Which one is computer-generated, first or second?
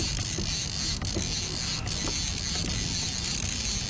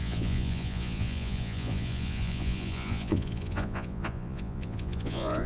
second